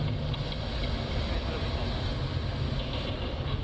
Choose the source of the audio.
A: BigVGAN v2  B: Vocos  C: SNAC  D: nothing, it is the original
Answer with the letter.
D